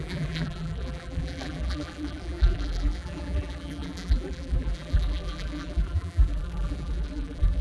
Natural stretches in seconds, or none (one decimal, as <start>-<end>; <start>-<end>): none